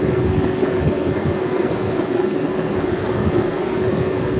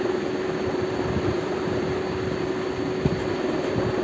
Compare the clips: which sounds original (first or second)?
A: second